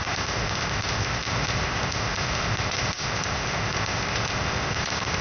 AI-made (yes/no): yes